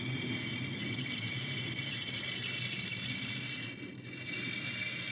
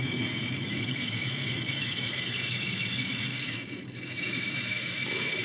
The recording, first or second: first